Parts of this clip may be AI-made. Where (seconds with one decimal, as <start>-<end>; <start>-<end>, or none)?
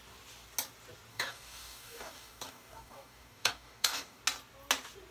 1.1-4.2